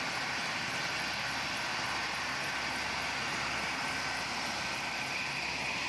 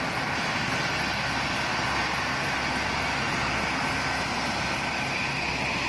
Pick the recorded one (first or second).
second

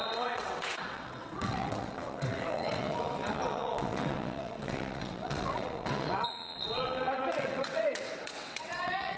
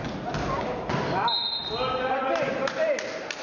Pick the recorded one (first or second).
second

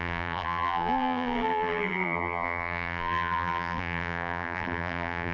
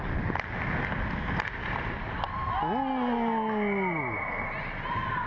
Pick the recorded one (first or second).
second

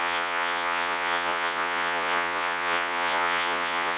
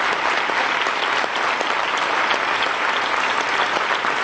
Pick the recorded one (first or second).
second